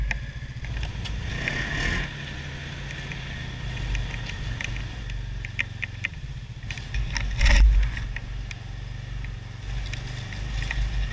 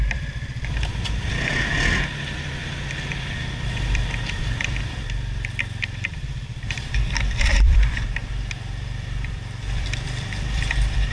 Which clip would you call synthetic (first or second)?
second